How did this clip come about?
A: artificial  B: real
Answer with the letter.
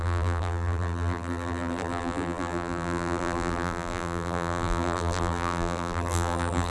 A